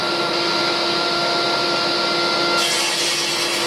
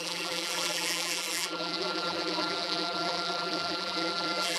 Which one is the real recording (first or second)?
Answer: first